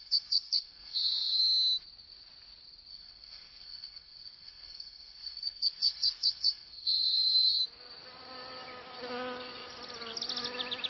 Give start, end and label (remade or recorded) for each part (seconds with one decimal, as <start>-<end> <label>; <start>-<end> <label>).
0.0-1.4 remade; 1.4-2.9 recorded; 2.9-7.6 remade; 7.6-10.9 recorded